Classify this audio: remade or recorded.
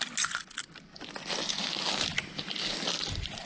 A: recorded